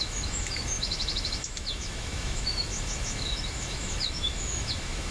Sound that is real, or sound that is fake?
fake